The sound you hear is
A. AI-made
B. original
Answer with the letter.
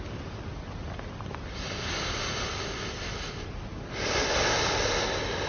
B